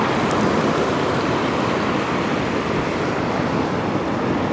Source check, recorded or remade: recorded